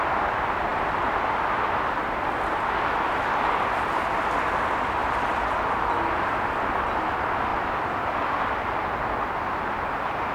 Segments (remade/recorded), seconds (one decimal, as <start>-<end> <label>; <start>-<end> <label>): 0.0-5.0 recorded; 5.0-5.6 remade; 5.6-10.3 recorded